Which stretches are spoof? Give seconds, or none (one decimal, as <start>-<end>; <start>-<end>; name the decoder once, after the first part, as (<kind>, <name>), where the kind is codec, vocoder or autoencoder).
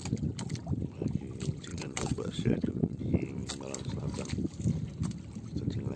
1.7-3.0 (vocoder, WaveNeXt)